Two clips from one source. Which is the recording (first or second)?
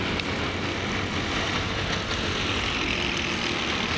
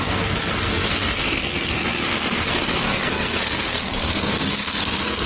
first